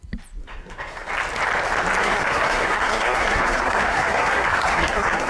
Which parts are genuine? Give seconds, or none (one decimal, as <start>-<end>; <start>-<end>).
0.0-0.4; 1.1-2.0